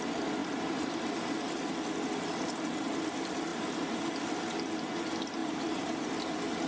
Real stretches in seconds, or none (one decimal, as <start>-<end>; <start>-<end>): 0.0-0.4; 1.7-3.5; 4.1-5.4; 6.1-6.7